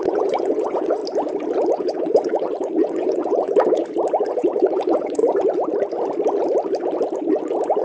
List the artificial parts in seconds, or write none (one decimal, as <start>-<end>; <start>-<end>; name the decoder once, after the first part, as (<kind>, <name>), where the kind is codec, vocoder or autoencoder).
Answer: 0.0-1.0 (vocoder, WaveNeXt); 1.7-3.8; 4.3-5.2